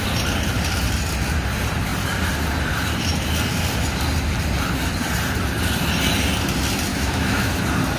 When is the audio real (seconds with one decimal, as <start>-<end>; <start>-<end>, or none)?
0.0-6.9; 7.5-8.0